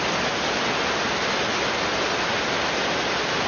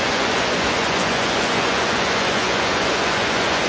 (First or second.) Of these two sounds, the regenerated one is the second